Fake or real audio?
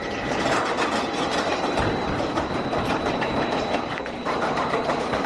fake